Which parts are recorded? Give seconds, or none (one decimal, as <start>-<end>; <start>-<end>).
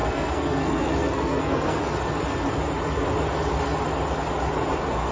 1.8-5.1